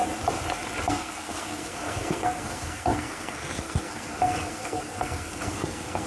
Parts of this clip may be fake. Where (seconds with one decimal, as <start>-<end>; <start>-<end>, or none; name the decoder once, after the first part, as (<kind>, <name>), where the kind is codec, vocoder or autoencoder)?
0.9-6.1 (codec, SNAC)